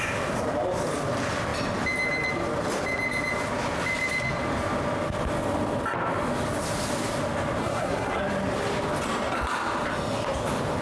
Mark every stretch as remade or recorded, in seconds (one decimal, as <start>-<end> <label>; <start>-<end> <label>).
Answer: 0.0-7.6 recorded; 7.6-8.2 remade; 8.2-10.8 recorded